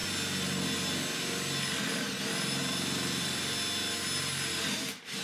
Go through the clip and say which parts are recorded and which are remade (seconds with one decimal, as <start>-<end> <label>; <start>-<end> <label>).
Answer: 0.0-2.6 recorded; 2.6-3.4 remade; 3.4-5.2 recorded